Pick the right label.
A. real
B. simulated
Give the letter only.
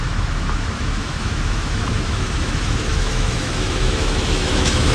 B